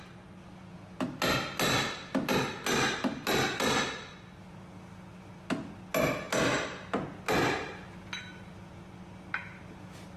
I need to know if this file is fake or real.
real